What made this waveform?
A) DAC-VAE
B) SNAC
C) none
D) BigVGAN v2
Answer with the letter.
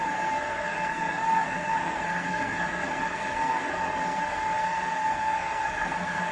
B